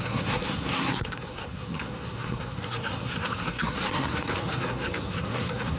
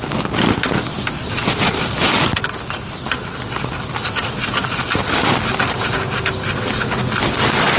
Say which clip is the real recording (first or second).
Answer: second